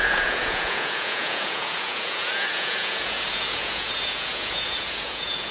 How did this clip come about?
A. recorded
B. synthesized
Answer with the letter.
B